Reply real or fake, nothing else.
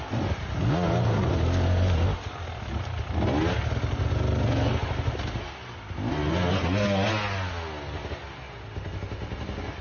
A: real